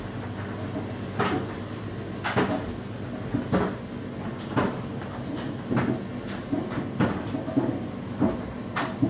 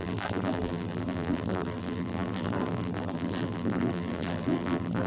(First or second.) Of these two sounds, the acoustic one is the first